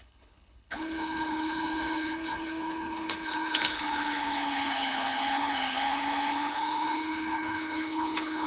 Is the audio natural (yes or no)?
no